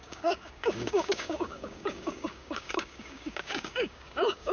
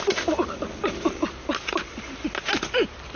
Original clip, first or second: second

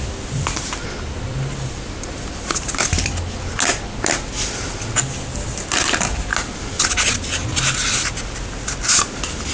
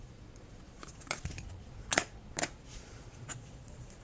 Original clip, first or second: first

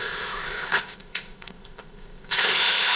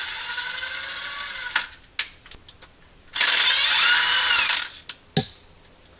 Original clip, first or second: second